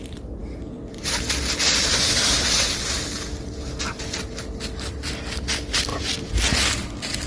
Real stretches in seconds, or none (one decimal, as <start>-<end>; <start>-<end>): 0.0-7.3

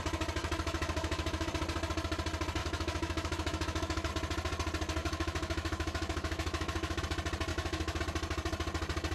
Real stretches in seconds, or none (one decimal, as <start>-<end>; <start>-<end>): 0.0-0.4; 1.5-2.6; 4.1-5.0; 7.0-7.5; 8.0-9.1

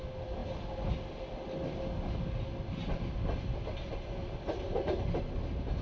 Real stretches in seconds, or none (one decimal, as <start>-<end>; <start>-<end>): 0.0-5.8

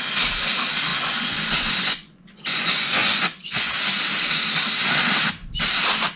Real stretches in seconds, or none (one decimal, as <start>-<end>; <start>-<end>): 0.0-0.9; 3.8-6.2

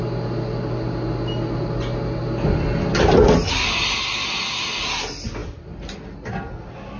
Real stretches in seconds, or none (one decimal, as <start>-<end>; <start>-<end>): 0.0-7.0

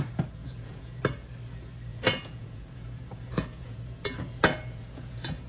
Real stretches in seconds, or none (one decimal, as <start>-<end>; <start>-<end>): 0.0-0.4; 1.0-1.9

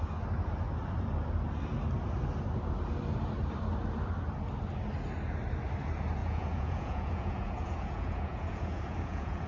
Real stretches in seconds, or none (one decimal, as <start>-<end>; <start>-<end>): 0.0-6.2